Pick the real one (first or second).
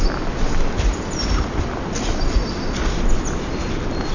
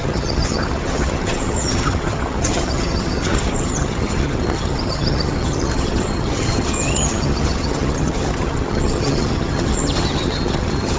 first